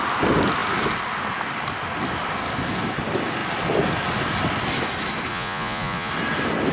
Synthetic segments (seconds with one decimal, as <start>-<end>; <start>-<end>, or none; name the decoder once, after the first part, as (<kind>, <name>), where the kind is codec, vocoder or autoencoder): 5.3-6.1 (vocoder, Vocos)